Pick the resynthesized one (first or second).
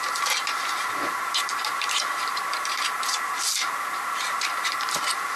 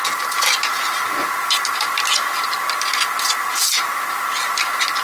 first